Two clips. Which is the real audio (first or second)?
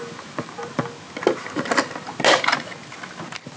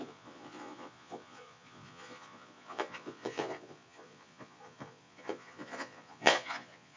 first